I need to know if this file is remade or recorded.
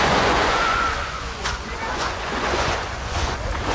remade